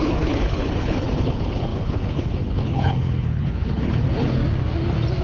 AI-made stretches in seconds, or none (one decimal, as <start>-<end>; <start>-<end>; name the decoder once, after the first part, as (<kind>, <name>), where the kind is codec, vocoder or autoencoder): 0.0-4.4 (codec, HILCodec)